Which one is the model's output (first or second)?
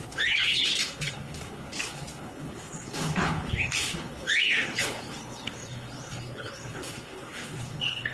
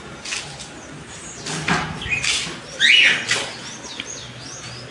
first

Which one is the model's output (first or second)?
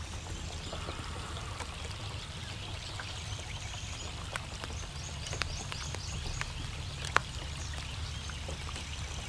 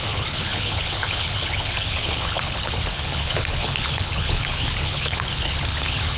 second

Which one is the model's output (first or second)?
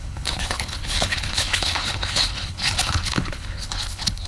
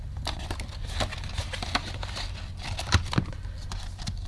first